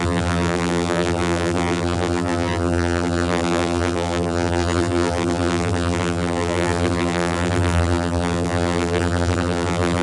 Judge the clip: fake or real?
fake